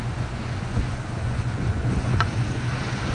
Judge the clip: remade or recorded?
remade